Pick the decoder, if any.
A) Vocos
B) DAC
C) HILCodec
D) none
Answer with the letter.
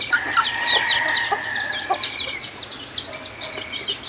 D